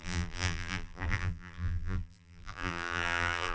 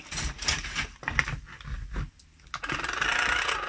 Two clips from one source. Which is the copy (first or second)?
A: first